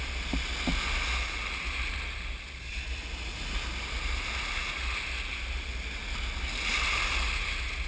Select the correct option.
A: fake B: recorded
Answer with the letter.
B